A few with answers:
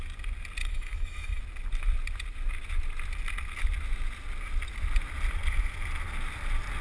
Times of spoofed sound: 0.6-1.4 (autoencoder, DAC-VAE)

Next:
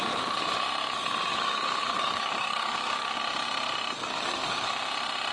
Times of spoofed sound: 1.3-3.2 (codec, DAC); 4.1-4.7

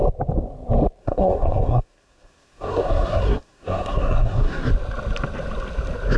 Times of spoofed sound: 1.0-4.7 (codec, SNAC)

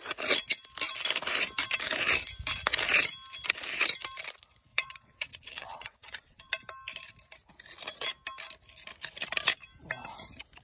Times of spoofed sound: 4.7-6.5 (vocoder, WaveNeXt)

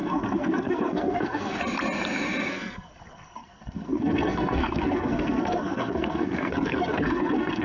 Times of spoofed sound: 0.0-1.6 (codec, SNAC); 2.5-7.6

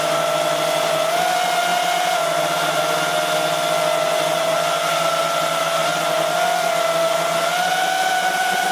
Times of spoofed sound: 1.7-2.8 (vocoder, BigVGAN v2)

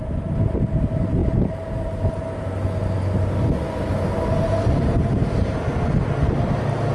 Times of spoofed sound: none